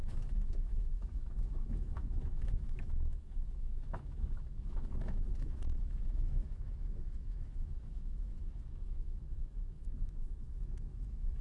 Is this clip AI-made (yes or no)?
yes